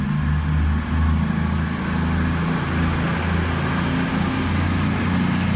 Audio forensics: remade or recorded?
recorded